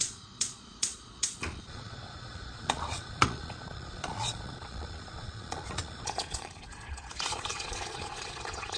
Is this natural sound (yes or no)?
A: no